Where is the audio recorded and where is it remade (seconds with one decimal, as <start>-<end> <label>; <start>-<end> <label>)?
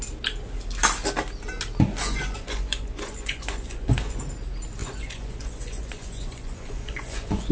0.0-2.0 recorded; 2.0-4.2 remade; 4.2-4.8 recorded; 4.8-7.5 remade